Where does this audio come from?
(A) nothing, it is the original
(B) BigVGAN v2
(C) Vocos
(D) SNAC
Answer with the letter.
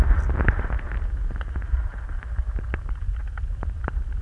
A